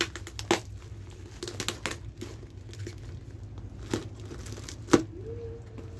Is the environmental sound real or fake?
real